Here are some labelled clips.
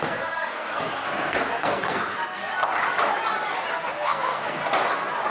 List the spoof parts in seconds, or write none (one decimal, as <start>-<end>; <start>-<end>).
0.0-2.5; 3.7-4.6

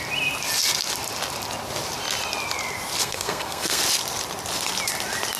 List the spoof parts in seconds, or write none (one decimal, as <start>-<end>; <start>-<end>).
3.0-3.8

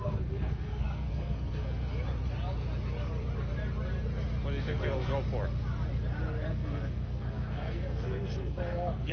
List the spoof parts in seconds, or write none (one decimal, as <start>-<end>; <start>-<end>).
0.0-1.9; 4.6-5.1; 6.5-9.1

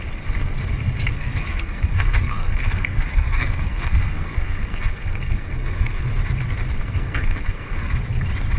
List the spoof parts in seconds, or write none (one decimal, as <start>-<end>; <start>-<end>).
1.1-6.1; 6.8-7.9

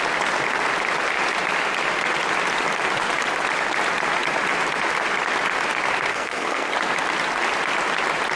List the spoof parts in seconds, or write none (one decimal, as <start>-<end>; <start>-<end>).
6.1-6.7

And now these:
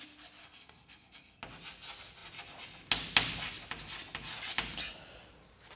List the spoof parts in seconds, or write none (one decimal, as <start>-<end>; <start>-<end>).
0.4-1.4